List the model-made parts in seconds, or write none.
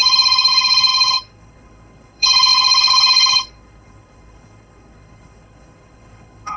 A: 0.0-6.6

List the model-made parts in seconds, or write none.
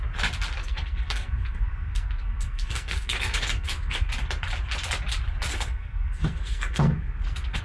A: 0.6-4.1; 5.5-7.6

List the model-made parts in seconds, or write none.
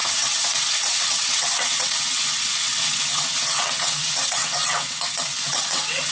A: 0.0-6.1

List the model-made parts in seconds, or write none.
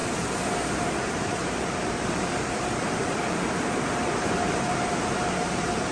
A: 1.1-5.9